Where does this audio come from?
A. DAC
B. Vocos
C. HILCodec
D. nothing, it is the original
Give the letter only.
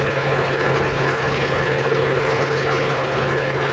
C